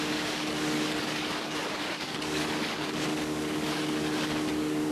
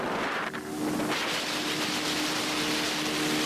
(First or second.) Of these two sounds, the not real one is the first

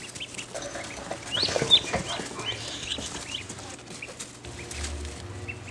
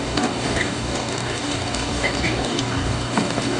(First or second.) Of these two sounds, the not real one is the second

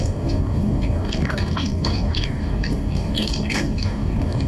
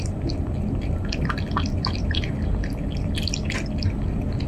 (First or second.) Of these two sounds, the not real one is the first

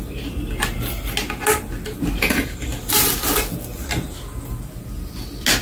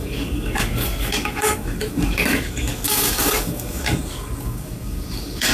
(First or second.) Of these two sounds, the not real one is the second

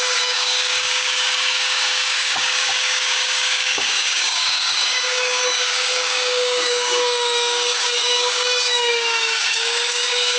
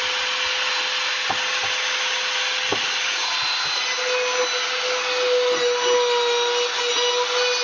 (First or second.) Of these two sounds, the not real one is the first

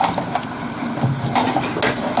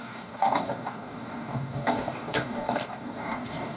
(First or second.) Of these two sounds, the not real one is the second